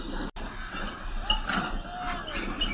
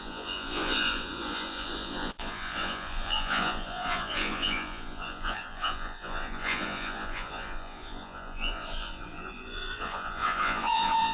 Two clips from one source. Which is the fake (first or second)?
second